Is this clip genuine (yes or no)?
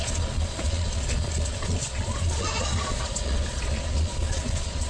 no